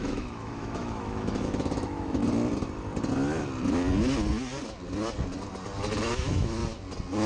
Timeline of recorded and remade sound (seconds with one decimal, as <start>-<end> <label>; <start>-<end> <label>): 0.0-2.2 remade; 2.2-6.1 recorded; 6.1-6.6 remade; 6.6-7.3 recorded